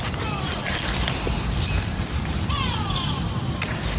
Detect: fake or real fake